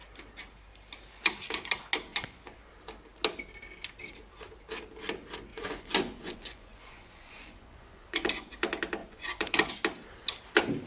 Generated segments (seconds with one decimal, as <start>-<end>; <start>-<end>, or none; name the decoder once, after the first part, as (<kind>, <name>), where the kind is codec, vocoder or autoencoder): 2.1-2.7 (vocoder, Vocos); 5.5-8.5; 9.0-9.7